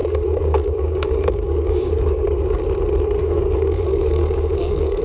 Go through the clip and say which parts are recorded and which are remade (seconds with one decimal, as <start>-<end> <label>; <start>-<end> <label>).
0.0-2.6 remade; 2.6-3.2 recorded; 3.2-5.0 remade